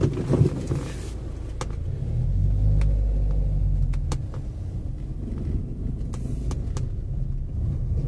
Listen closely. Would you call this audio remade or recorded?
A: recorded